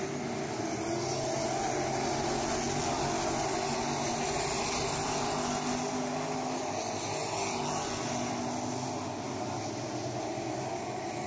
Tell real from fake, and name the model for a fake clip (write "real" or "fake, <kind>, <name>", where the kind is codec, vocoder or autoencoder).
real